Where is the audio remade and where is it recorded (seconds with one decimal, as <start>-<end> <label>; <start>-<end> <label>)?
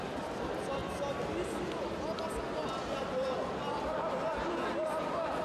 0.0-5.4 recorded